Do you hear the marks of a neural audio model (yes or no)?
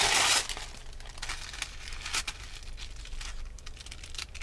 no